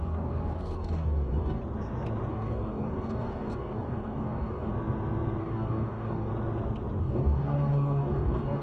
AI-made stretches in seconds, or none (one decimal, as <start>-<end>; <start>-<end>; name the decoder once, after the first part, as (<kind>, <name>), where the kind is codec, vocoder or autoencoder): 0.0-1.6 (codec, DAC); 2.3-4.7; 5.4-6.3; 7.0-8.6

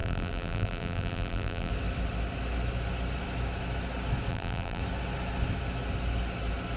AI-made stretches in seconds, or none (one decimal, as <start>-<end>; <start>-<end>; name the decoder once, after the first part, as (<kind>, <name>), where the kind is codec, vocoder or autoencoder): 0.0-1.7 (vocoder, BigVGAN v2); 4.3-4.8

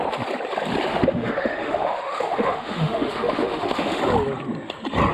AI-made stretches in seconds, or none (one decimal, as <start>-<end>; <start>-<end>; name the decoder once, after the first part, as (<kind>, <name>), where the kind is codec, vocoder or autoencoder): 0.9-4.0 (autoencoder, DAC-VAE)

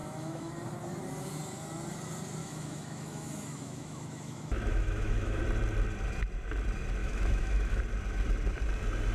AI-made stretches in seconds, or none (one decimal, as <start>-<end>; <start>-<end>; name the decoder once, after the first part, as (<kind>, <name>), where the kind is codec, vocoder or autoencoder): 0.0-0.5 (autoencoder, DAC-VAE); 2.4-5.4; 7.0-7.8

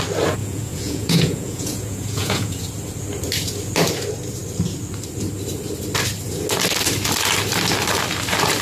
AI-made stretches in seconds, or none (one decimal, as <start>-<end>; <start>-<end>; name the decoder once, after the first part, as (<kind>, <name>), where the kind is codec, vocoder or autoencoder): 0.4-2.6 (vocoder, Vocos)

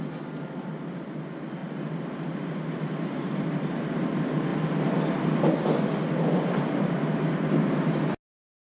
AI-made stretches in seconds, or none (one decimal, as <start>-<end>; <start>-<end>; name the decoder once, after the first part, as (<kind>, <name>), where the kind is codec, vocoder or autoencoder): none

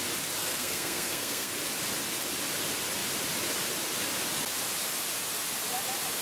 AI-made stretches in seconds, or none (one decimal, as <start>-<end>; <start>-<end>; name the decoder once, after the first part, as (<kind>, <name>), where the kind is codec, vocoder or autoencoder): 0.4-1.5 (codec, SNAC)